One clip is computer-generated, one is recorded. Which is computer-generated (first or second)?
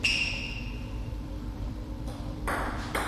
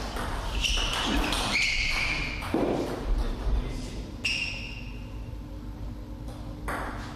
first